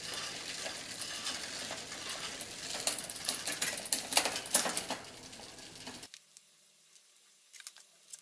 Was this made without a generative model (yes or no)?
yes